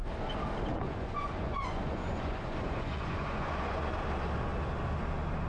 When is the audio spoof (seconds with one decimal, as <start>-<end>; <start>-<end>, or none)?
0.7-4.0